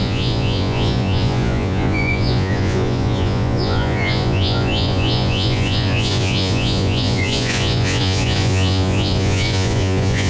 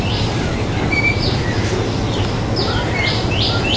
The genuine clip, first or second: second